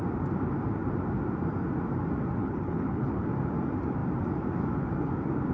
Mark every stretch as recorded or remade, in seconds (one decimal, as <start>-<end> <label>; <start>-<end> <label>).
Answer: 0.0-2.4 recorded; 2.4-3.2 remade; 3.2-5.5 recorded